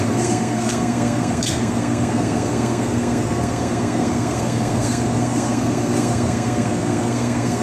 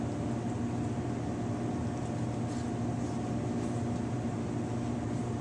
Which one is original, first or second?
second